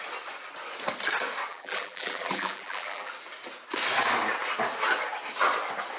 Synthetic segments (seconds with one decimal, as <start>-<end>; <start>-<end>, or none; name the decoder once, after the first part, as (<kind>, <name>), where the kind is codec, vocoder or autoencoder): 1.5-3.1 (vocoder, BigVGAN v2)

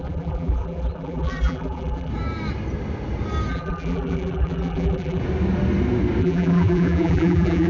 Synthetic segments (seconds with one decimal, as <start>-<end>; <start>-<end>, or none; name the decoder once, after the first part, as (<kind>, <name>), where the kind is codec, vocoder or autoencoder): 0.0-2.1 (vocoder, BigVGAN v2); 3.5-5.2; 6.2-7.7

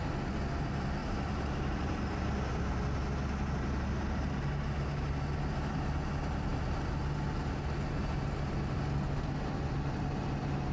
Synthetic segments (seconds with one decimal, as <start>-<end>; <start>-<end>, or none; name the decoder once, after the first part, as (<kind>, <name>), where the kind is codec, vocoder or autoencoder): 1.0-2.6 (vocoder, BigVGAN v2)

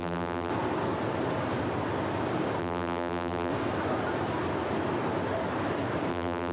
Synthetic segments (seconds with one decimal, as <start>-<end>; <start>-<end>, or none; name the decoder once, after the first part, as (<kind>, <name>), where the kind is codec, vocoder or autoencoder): 0.0-0.5 (vocoder, BigVGAN v2); 2.6-3.5; 6.1-6.5